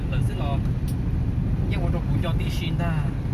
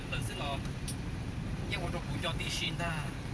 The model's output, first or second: second